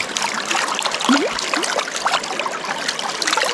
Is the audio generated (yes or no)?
no